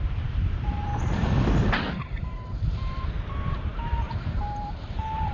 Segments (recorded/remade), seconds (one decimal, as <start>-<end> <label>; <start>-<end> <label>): 0.0-0.9 remade; 0.9-1.9 recorded; 1.9-5.3 remade